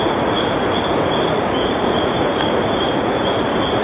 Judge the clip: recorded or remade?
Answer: remade